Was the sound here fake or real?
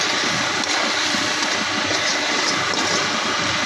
real